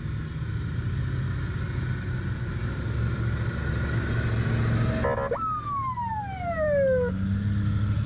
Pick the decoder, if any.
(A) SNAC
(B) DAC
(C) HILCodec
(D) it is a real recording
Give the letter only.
D